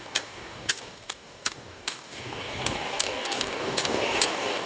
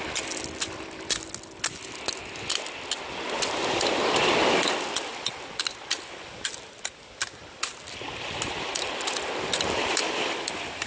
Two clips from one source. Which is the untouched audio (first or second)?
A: second